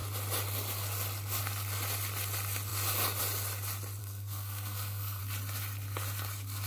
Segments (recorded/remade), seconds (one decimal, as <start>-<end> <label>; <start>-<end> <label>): 0.0-4.0 recorded; 4.0-5.2 remade; 5.2-6.7 recorded